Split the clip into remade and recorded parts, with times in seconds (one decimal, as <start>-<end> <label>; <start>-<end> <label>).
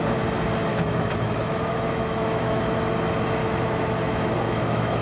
0.0-0.7 recorded; 0.7-2.6 remade; 2.6-3.4 recorded; 3.4-5.0 remade